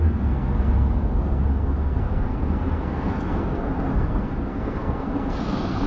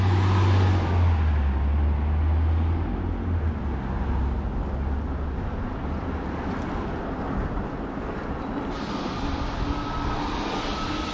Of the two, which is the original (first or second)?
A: second